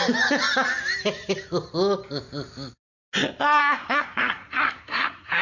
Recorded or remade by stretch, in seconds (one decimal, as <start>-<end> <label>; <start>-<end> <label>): 0.0-3.6 recorded; 3.6-5.4 remade